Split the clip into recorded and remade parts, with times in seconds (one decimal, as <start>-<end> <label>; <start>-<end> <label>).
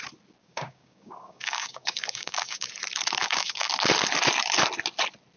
0.0-0.4 recorded; 0.4-2.7 remade; 2.7-3.2 recorded; 3.2-3.7 remade; 3.7-5.4 recorded